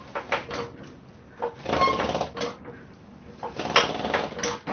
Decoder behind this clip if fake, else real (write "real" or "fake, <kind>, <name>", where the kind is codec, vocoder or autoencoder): real